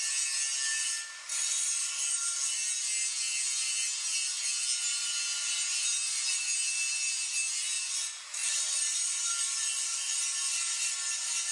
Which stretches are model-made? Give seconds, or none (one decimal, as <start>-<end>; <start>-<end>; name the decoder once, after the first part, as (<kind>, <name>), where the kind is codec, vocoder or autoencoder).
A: 8.4-9.3 (vocoder, BigVGAN v2)